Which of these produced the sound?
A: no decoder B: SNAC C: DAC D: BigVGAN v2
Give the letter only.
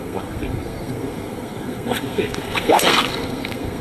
B